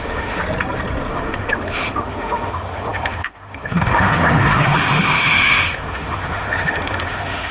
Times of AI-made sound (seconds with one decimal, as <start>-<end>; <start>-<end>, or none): 0.0-0.4; 1.1-7.5